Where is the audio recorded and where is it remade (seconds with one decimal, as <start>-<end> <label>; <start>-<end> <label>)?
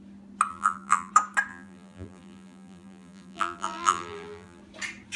0.0-0.5 recorded; 0.5-1.1 remade; 1.1-1.5 recorded; 1.5-4.6 remade; 4.6-5.2 recorded